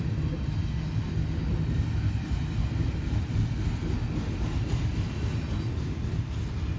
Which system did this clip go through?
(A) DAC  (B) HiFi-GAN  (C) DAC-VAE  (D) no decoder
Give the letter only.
D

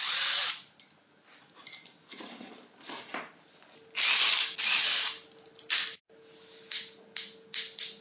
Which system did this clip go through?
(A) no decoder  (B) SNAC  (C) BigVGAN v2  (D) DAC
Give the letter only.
A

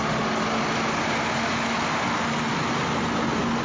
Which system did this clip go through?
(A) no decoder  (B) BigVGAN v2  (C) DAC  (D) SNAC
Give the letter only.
A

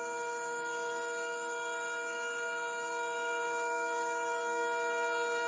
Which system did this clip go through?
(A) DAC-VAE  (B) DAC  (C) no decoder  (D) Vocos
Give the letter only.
B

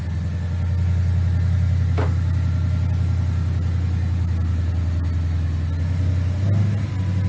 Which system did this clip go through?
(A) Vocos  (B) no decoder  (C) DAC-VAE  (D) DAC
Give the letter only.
B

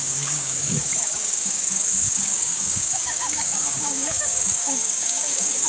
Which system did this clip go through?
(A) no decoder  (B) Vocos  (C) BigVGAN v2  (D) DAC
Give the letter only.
D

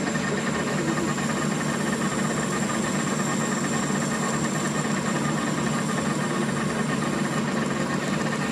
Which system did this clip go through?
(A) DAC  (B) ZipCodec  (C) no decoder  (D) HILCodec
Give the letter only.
C